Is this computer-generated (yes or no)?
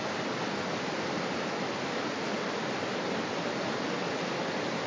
no